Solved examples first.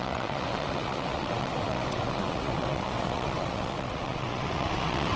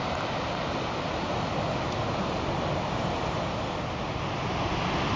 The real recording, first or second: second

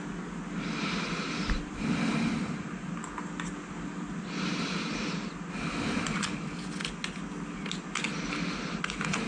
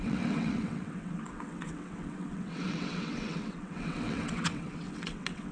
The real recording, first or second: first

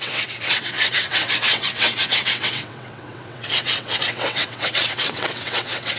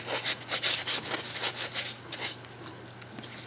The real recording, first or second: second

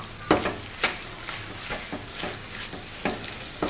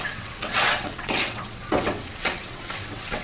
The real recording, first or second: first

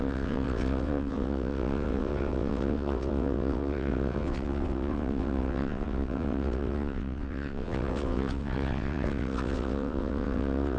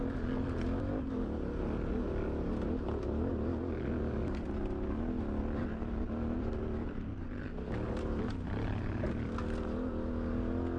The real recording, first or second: second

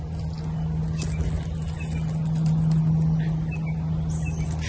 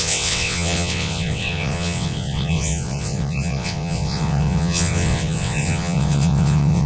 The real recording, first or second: first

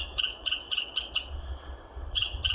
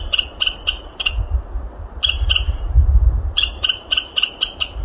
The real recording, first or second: second